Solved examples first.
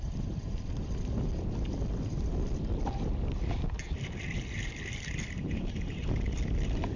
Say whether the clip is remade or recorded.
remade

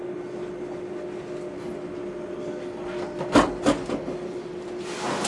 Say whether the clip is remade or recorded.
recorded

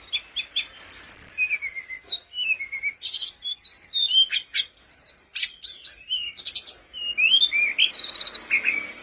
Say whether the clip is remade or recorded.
recorded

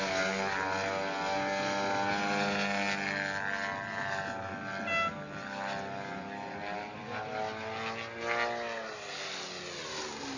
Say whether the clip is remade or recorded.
recorded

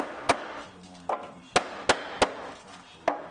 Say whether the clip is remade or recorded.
recorded